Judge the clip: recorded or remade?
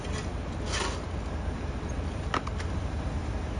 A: recorded